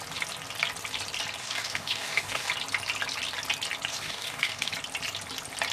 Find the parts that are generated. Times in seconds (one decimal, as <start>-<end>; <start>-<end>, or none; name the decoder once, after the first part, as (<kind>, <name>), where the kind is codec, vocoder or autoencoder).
1.4-2.5 (codec, DAC); 3.9-4.7